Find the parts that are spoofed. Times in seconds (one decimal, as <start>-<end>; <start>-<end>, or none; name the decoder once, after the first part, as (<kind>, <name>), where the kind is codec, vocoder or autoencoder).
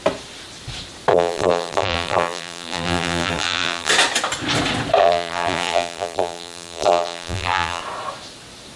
1.1-3.9 (vocoder, BigVGAN v2); 5.0-7.8